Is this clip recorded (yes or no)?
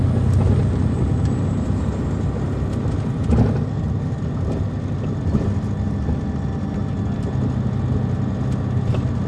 yes